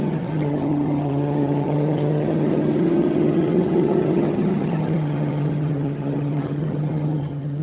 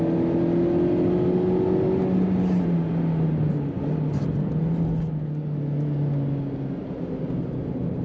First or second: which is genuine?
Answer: second